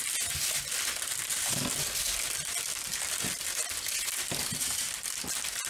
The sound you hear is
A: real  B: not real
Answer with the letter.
A